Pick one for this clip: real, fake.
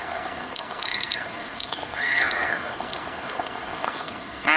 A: fake